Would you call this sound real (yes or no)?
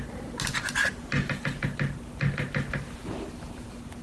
yes